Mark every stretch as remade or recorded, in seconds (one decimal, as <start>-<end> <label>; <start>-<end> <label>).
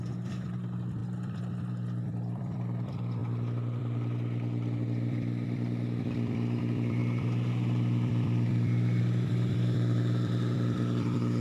0.0-3.2 remade; 3.2-3.8 recorded; 3.8-11.4 remade